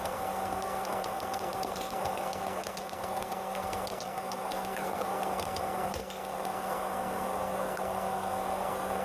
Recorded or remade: remade